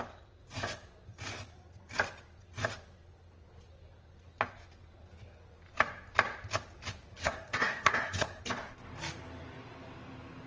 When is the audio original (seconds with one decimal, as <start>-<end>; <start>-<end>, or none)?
0.0-7.2; 8.4-10.5